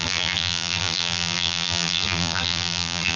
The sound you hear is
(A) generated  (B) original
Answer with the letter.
A